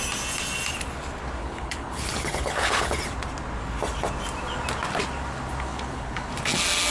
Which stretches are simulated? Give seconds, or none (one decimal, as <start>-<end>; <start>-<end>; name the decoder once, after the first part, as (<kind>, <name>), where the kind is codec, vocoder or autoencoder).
1.4-3.0 (codec, HILCodec); 5.7-6.3